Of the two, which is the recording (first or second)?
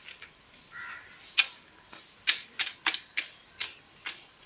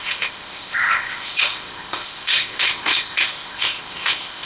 first